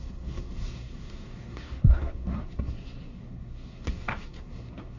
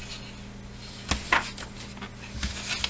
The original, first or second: second